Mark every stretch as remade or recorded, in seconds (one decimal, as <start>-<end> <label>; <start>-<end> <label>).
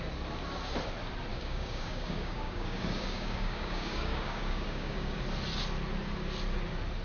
0.0-1.3 recorded; 1.3-5.2 remade; 5.2-7.0 recorded